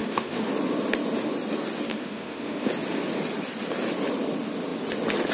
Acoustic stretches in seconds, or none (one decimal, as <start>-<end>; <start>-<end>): 0.5-1.9; 2.7-5.3